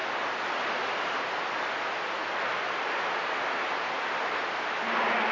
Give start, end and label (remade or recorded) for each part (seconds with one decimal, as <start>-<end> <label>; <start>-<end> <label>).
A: 0.0-5.3 recorded